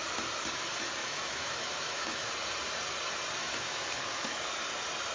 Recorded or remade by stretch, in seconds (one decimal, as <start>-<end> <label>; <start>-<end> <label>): 0.0-1.0 recorded; 1.0-2.3 remade; 2.3-3.4 recorded; 3.4-4.5 remade; 4.5-5.1 recorded